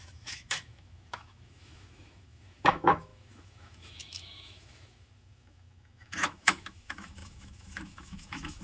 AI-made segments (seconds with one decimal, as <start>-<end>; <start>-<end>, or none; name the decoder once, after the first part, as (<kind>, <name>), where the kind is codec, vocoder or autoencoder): 0.0-8.6 (autoencoder, DAC-VAE)